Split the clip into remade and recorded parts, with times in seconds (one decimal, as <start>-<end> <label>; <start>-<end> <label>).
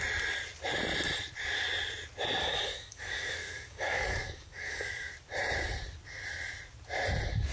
0.0-2.4 recorded; 2.4-5.1 remade; 5.1-7.5 recorded